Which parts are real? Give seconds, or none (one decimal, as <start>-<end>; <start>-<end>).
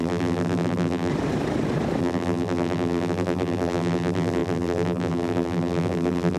1.1-2.0